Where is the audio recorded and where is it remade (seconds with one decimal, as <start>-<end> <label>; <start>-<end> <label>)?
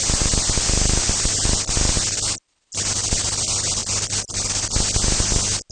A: 0.0-3.8 recorded; 3.8-4.3 remade; 4.3-5.7 recorded